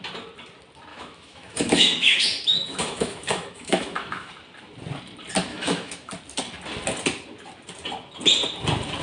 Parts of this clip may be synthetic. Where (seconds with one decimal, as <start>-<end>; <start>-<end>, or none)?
0.9-4.3; 5.5-6.1